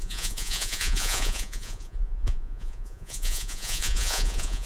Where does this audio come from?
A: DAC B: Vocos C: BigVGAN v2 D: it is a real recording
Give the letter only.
B